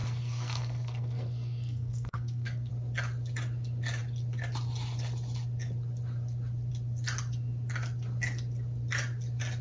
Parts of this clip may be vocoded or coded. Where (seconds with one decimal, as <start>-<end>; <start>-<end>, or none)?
0.0-2.7